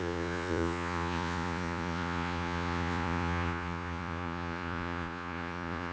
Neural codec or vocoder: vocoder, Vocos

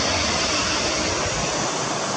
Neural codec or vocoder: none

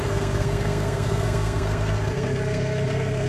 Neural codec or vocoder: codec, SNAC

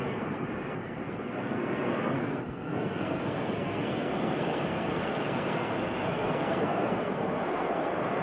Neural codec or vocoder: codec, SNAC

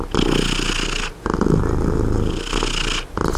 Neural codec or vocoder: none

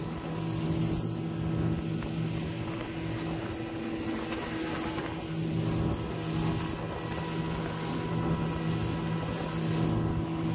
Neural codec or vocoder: none